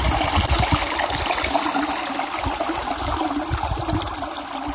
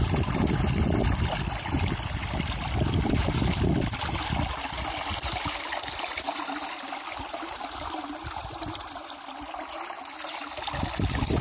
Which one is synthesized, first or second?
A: second